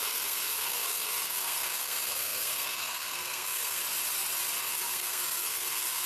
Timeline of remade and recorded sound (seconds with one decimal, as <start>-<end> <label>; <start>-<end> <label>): 0.0-3.8 remade; 3.8-4.6 recorded; 4.6-6.1 remade